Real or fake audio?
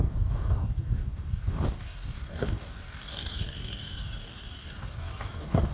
fake